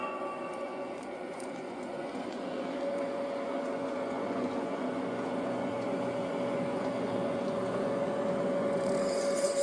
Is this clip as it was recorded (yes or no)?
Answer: no